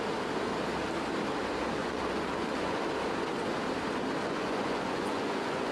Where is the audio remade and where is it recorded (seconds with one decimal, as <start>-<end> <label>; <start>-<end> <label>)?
0.0-1.8 recorded; 1.8-2.8 remade; 2.8-4.2 recorded; 4.2-5.7 remade